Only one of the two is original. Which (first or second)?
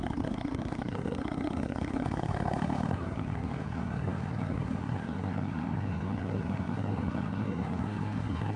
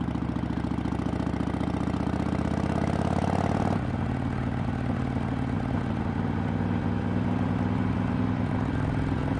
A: second